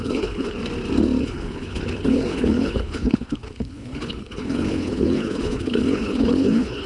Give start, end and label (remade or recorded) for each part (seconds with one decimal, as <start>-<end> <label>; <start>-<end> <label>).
0.0-0.6 remade; 0.6-1.2 recorded; 1.2-6.9 remade